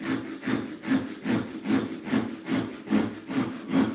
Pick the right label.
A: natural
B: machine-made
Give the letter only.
A